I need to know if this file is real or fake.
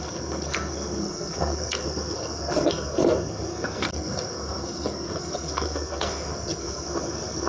fake